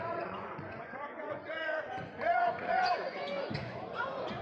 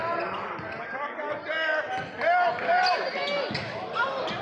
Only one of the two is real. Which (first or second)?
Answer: second